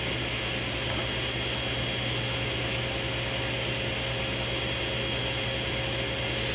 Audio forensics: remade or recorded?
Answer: recorded